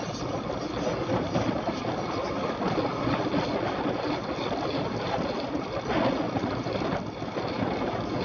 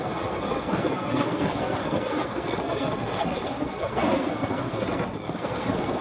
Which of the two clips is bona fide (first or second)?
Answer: first